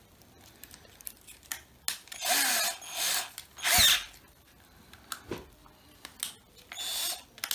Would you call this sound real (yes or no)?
yes